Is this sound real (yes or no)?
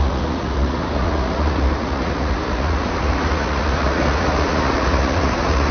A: no